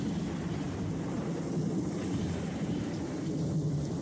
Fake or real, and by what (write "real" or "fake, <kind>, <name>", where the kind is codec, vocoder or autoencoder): fake, vocoder, BigVGAN v2